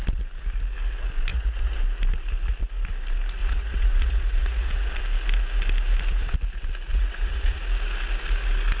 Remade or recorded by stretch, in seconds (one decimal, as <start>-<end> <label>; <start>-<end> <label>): 0.0-1.3 recorded; 1.3-1.8 remade; 1.8-3.4 recorded; 3.4-5.0 remade; 5.0-6.9 recorded; 6.9-7.6 remade; 7.6-8.8 recorded

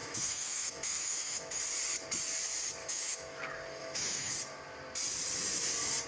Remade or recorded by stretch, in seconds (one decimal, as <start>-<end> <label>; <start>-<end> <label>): 0.0-1.6 remade; 1.6-2.8 recorded; 2.8-3.4 remade; 3.4-3.8 recorded; 3.8-4.3 remade; 4.3-6.1 recorded

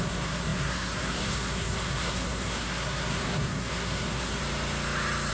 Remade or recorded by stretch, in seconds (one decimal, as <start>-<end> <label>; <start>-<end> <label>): 0.0-4.4 remade; 4.4-5.3 recorded

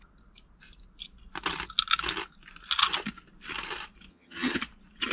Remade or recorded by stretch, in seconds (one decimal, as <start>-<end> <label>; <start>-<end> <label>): 0.0-4.1 recorded; 4.1-4.6 remade; 4.6-5.1 recorded

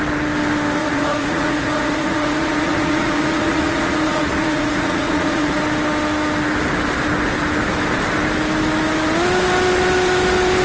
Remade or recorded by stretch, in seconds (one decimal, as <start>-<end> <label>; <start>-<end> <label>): 0.0-0.8 recorded; 0.8-5.6 remade; 5.6-10.6 recorded

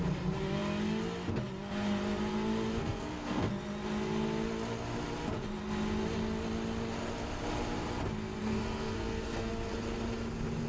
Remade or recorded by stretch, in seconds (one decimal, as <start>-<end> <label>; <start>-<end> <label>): 0.0-2.8 recorded; 2.8-3.5 remade; 3.5-8.4 recorded; 8.4-9.5 remade; 9.5-10.7 recorded

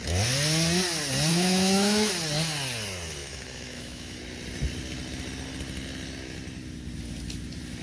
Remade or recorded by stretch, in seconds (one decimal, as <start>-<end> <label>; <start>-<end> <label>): 0.0-1.3 recorded; 1.3-2.1 remade; 2.1-3.2 recorded; 3.2-4.2 remade; 4.2-7.8 recorded